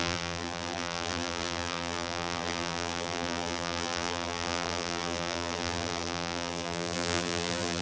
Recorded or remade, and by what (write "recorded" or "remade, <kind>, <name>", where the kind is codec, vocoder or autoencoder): remade, vocoder, BigVGAN v2